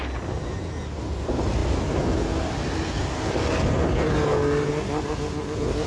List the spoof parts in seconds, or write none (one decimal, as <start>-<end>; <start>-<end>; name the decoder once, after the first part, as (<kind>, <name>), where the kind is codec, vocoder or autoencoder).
none